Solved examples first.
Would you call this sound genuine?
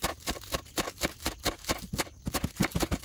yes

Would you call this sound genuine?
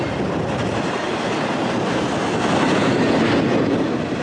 yes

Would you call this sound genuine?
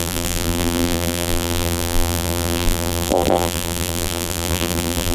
no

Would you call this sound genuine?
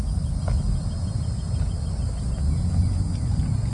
yes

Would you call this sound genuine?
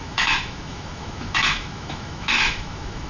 no